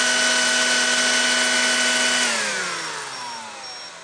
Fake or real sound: real